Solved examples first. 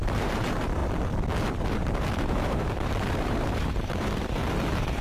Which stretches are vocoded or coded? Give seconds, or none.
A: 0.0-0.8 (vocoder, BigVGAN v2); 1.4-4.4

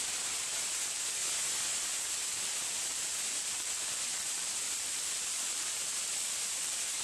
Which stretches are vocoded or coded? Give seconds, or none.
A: 0.0-1.2 (vocoder, BigVGAN v2); 1.8-7.0

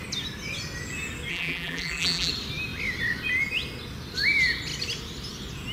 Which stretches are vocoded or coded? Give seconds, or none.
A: 1.3-2.3 (vocoder, BigVGAN v2)

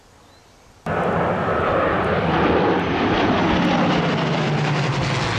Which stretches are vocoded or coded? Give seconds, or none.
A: 0.4-3.6 (vocoder, BigVGAN v2)